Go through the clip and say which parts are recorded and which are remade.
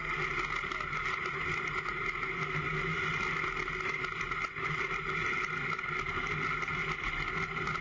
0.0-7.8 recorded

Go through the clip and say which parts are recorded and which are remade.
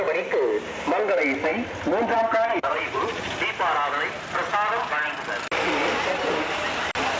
0.0-2.6 recorded; 2.6-3.3 remade; 3.3-7.2 recorded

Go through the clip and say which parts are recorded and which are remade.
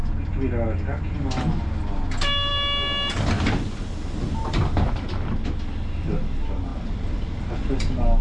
0.0-8.2 recorded